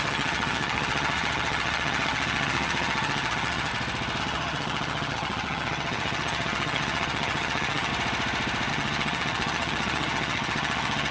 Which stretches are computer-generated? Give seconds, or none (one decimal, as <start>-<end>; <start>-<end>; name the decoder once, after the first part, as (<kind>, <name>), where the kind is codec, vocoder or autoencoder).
0.0-3.7 (vocoder, HiFi-GAN); 4.2-7.9; 8.7-11.1